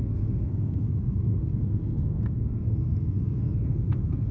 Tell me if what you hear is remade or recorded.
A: remade